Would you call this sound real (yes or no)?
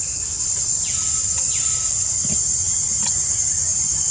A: yes